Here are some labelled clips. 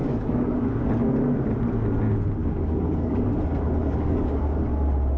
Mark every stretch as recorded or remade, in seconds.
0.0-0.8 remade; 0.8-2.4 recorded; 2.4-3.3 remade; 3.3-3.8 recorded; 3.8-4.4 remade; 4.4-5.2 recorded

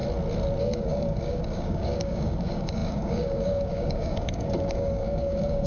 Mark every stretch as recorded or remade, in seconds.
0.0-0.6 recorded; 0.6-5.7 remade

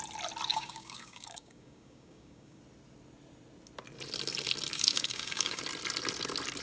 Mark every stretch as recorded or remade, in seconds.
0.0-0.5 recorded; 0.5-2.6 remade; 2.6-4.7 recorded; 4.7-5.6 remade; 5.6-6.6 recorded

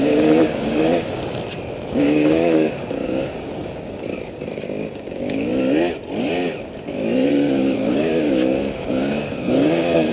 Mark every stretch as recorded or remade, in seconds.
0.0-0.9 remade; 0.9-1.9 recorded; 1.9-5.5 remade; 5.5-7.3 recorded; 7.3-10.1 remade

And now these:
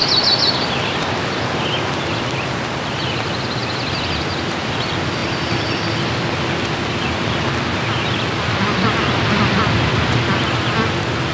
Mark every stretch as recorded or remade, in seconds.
0.0-11.3 recorded

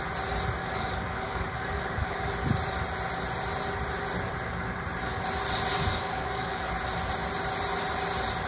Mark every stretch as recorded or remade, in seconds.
0.0-0.6 recorded; 0.6-2.3 remade; 2.3-5.9 recorded; 5.9-6.7 remade; 6.7-8.5 recorded